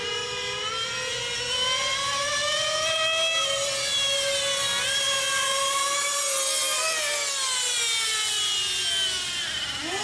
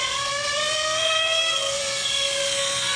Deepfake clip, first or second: second